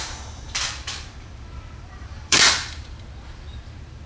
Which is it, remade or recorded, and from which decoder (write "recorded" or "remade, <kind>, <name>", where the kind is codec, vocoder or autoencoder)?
remade, vocoder, BigVGAN v2